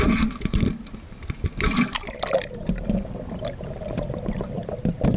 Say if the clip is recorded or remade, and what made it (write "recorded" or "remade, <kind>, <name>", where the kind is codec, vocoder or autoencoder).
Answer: recorded